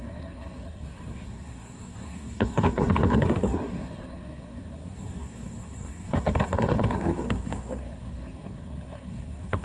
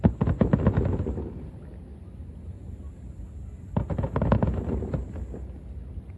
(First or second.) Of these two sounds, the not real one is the first